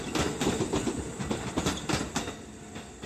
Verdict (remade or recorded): recorded